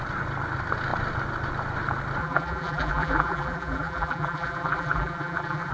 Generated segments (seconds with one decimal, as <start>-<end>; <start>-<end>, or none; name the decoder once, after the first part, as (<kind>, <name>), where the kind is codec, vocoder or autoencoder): 2.2-5.7 (vocoder, BigVGAN v2)